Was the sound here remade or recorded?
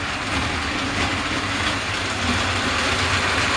recorded